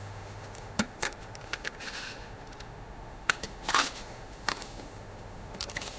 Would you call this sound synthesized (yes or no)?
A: yes